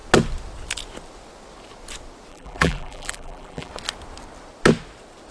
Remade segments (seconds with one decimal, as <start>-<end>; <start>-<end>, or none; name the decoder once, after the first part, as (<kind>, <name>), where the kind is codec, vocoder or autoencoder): 2.3-3.7 (vocoder, BigVGAN v2)